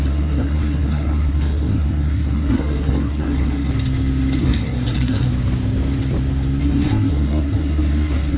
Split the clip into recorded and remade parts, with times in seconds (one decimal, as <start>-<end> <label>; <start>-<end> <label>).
0.0-3.7 remade; 3.7-4.4 recorded; 4.4-5.3 remade; 5.3-6.6 recorded; 6.6-8.4 remade